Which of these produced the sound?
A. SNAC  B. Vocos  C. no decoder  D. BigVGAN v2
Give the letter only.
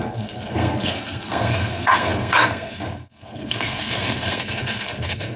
A